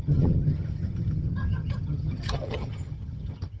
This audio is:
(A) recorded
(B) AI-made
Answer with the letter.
B